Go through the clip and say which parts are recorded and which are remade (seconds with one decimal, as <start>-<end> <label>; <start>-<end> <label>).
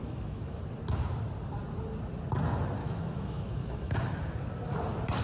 0.0-0.6 remade; 0.6-2.8 recorded; 2.8-4.0 remade; 4.0-5.2 recorded